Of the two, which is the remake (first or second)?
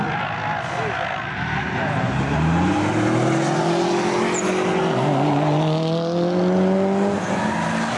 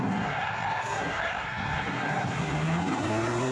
second